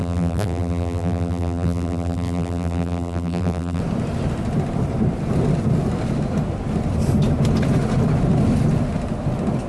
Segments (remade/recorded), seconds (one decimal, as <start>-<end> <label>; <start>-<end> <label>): 0.0-3.8 remade; 3.8-9.7 recorded